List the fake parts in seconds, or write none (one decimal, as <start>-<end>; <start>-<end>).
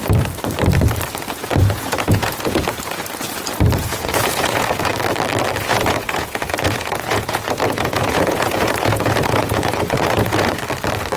1.6-2.7; 3.8-4.9; 5.6-10.6